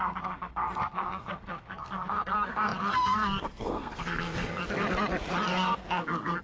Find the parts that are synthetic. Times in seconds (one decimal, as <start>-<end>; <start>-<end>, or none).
0.0-4.6; 5.4-6.4